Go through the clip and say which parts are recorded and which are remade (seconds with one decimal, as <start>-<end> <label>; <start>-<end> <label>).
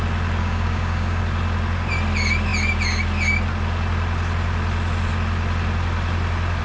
0.0-0.4 recorded; 0.4-1.2 remade; 1.2-6.6 recorded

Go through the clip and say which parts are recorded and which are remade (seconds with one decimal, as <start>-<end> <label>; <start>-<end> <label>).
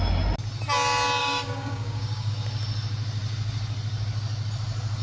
0.0-1.2 recorded; 1.2-2.3 remade; 2.3-5.0 recorded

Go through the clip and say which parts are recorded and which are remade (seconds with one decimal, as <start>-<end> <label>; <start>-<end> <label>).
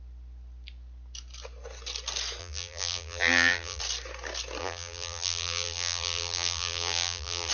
0.0-2.4 recorded; 2.4-3.8 remade; 3.8-4.6 recorded; 4.6-7.5 remade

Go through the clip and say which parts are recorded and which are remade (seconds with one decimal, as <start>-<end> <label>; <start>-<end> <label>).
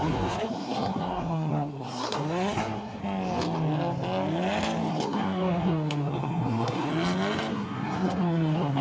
0.0-3.0 remade; 3.0-4.9 recorded; 4.9-6.9 remade; 6.9-7.5 recorded; 7.5-8.8 remade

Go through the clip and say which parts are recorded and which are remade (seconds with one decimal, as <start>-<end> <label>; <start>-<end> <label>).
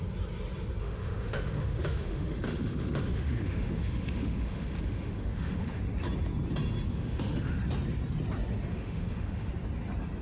0.0-0.8 recorded; 0.8-5.8 remade; 5.8-6.9 recorded; 6.9-7.6 remade; 7.6-8.7 recorded; 8.7-9.5 remade; 9.5-10.2 recorded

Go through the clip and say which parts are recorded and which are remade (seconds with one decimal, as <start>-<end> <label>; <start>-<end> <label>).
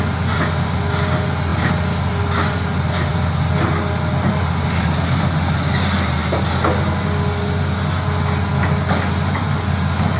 0.0-10.2 recorded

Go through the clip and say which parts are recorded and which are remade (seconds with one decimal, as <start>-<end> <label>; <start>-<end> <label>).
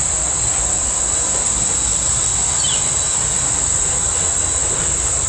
0.0-1.4 remade; 1.4-1.9 recorded; 1.9-2.8 remade; 2.8-5.3 recorded